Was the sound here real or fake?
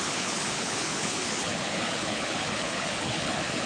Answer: fake